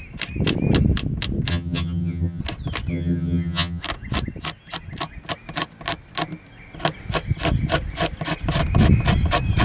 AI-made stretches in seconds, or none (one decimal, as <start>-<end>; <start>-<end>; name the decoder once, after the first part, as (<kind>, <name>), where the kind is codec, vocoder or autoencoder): 1.5-2.4 (vocoder, HiFi-GAN); 2.9-3.8